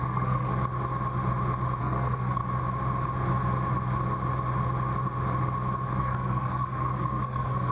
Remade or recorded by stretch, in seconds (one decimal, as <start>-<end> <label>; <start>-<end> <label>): 0.0-0.5 remade; 0.5-1.8 recorded; 1.8-2.4 remade; 2.4-6.0 recorded; 6.0-7.7 remade

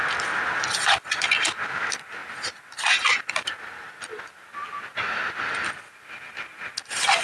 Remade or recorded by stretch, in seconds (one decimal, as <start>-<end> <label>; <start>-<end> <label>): 0.0-7.2 recorded

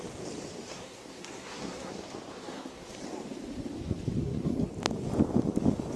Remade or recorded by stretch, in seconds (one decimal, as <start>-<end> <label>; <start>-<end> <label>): 0.0-0.7 recorded; 0.7-1.9 remade; 1.9-2.3 recorded; 2.3-3.0 remade; 3.0-4.2 recorded; 4.2-4.7 remade; 4.7-6.0 recorded

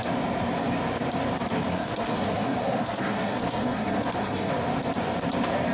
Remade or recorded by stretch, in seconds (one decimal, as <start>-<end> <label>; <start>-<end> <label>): 0.0-1.7 recorded; 1.7-4.5 remade; 4.5-5.7 recorded